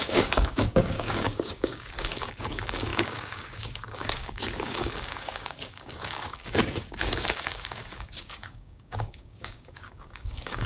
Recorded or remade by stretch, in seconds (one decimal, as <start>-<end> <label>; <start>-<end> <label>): 0.0-10.7 remade